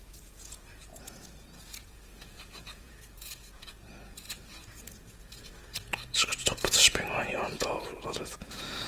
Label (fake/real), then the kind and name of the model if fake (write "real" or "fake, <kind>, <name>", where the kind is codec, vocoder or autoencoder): fake, vocoder, Vocos